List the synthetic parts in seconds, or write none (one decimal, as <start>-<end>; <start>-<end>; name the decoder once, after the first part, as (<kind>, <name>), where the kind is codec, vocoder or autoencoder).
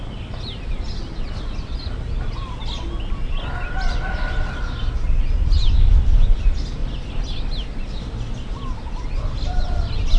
none